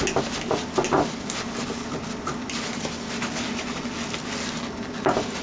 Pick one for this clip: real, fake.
real